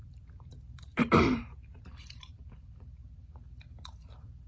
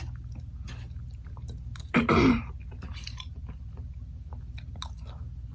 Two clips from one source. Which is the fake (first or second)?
first